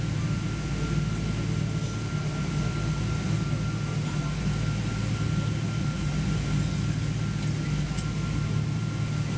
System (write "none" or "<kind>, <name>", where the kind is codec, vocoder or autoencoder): none